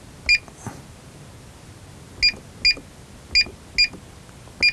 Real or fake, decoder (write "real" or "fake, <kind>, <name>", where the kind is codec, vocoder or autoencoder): real